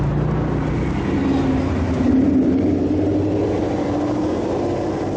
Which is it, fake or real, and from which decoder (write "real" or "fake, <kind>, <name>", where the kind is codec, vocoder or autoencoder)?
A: real